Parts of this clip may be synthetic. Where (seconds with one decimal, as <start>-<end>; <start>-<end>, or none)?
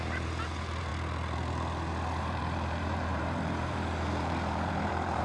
0.0-0.9; 2.2-5.2